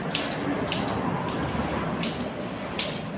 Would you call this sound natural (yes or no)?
yes